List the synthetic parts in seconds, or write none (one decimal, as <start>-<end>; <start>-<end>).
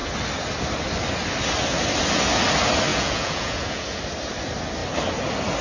2.9-4.0